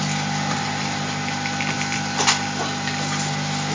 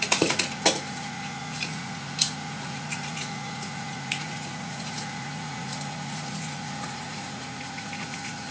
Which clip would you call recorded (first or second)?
first